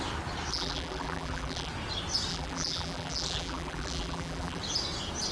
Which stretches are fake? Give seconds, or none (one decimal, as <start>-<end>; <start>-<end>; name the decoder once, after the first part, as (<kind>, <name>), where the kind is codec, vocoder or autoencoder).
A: 0.5-1.7 (vocoder, BigVGAN v2); 2.3-4.6